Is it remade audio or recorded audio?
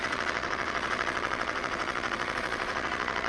remade